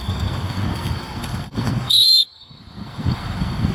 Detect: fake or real fake